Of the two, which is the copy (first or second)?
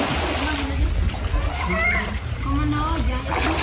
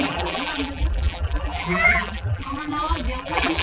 second